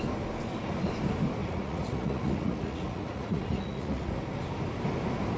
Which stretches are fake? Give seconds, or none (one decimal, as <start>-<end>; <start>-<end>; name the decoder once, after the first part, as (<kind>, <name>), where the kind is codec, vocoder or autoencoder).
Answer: 1.4-4.2 (vocoder, Vocos)